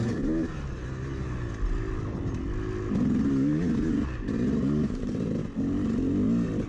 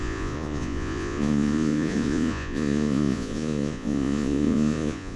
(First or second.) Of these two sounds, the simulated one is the second